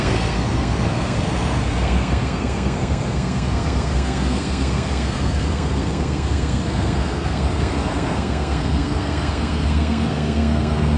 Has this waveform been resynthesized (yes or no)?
yes